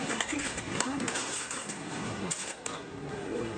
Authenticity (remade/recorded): remade